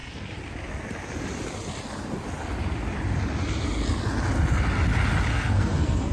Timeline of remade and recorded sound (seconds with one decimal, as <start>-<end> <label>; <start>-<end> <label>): 0.0-5.3 recorded; 5.3-6.1 remade